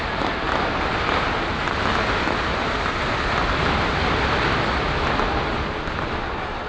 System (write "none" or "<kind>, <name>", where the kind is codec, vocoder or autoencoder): none